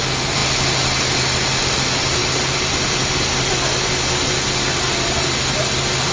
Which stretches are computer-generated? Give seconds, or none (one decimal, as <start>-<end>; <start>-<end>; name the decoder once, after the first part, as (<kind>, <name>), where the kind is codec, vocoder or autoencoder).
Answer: none